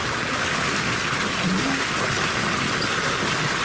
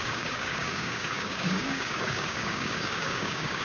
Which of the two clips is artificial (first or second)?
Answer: second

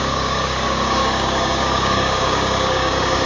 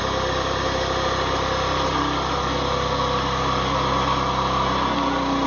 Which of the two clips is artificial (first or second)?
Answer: first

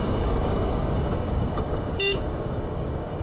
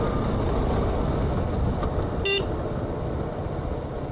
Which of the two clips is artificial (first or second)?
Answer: first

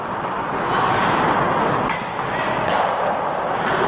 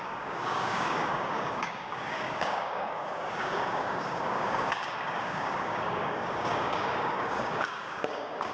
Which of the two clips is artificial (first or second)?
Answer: second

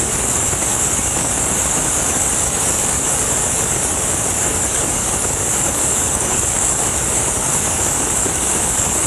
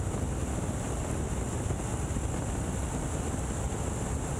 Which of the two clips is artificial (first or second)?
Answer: first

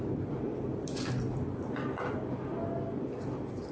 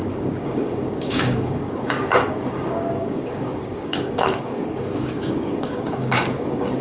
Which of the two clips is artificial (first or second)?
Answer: second